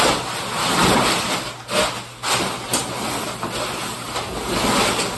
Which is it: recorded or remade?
recorded